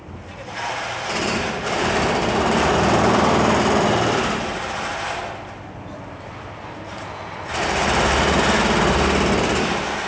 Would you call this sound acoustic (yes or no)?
yes